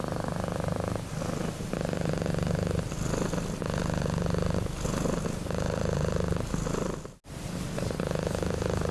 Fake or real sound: real